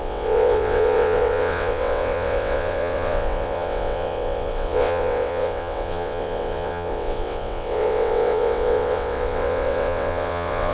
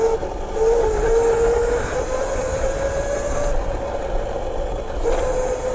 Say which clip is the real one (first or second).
second